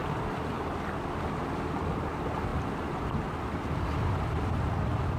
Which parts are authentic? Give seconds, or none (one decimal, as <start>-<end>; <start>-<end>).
0.0-5.2